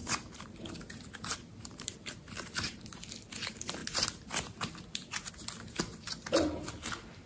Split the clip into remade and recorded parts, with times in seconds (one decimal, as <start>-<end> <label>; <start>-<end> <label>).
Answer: 0.0-3.1 remade; 3.1-7.3 recorded